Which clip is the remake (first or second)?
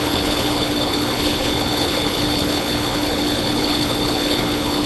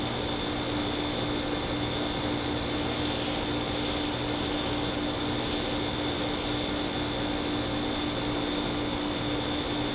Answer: first